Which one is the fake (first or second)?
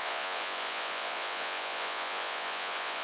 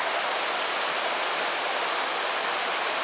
first